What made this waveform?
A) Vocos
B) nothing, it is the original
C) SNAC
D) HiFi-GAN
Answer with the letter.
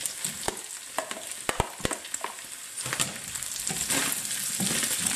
B